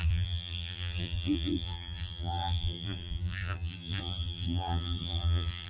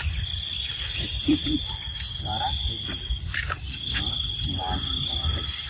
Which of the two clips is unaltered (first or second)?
second